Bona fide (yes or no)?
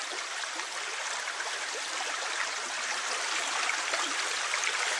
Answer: yes